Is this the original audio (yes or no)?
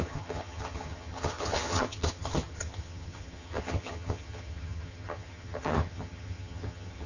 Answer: no